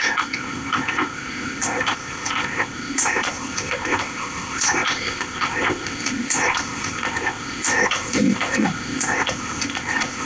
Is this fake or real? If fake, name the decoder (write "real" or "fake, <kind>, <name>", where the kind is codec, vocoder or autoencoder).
fake, codec, ZipCodec